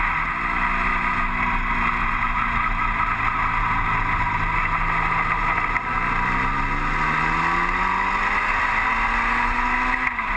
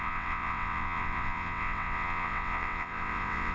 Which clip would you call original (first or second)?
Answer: first